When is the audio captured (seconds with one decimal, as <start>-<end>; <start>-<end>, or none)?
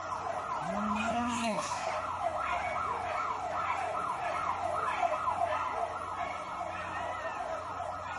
0.0-1.1; 1.9-8.2